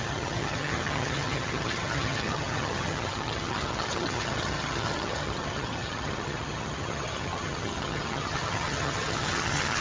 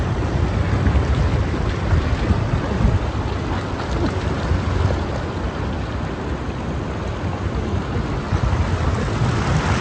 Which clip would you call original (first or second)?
second